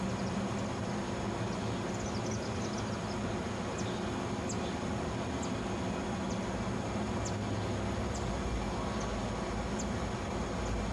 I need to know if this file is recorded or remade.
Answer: recorded